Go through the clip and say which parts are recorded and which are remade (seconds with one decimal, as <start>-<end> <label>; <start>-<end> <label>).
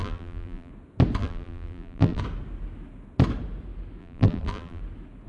0.0-0.7 remade; 0.7-1.2 recorded; 1.2-2.2 remade; 2.2-4.0 recorded; 4.0-4.8 remade; 4.8-5.3 recorded